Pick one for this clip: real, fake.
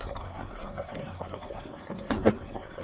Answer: fake